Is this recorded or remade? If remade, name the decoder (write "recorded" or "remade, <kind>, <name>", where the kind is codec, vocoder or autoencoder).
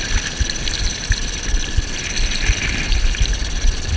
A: recorded